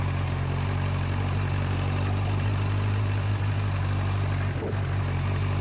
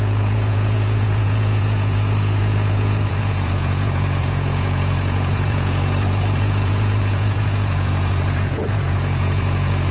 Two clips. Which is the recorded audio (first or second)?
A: first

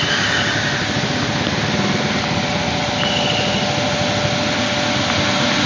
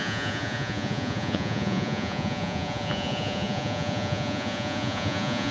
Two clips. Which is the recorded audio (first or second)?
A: first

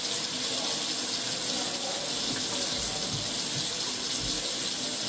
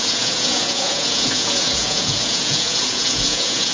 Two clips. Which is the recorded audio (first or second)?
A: first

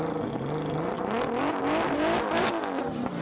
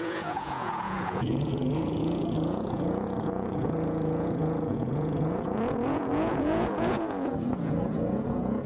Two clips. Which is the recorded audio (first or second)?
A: first